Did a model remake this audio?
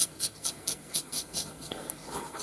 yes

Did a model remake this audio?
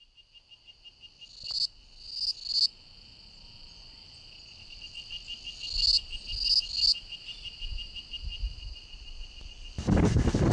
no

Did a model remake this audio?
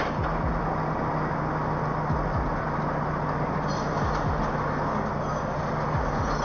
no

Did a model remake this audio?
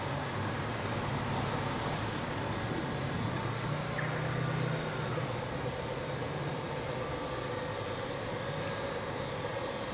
no